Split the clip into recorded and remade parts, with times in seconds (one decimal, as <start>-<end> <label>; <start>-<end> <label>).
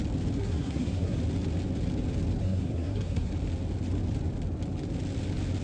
0.0-0.4 recorded; 0.4-1.2 remade; 1.2-2.4 recorded; 2.4-3.3 remade; 3.3-5.6 recorded